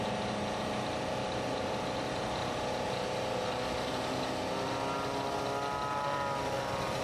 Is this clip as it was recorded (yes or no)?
yes